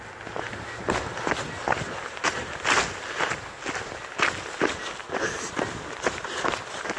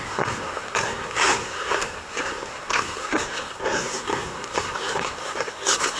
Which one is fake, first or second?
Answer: second